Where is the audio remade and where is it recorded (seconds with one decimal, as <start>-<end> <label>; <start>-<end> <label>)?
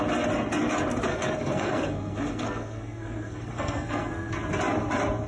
0.0-1.1 recorded; 1.1-4.3 remade; 4.3-5.3 recorded